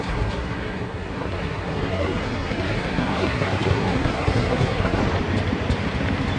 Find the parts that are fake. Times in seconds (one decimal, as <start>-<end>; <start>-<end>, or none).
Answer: 0.0-5.0